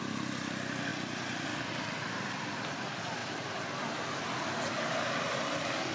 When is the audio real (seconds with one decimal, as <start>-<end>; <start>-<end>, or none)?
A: 0.0-5.9